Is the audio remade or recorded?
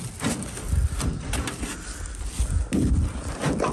recorded